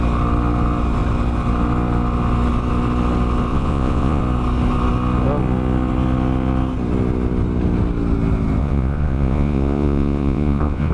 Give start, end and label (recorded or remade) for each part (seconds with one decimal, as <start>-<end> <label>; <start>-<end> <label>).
0.0-3.5 recorded; 3.5-4.2 remade; 4.2-8.6 recorded; 8.6-10.9 remade